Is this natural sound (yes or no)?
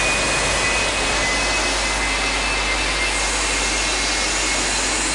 yes